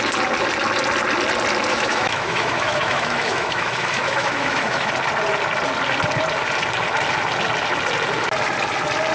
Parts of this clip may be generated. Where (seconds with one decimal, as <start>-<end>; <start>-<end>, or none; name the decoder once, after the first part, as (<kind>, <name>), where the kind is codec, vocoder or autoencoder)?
1.7-4.9 (autoencoder, DAC-VAE)